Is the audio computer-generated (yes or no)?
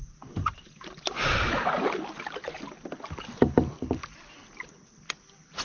no